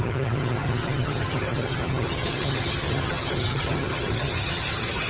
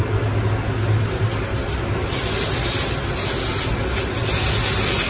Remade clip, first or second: first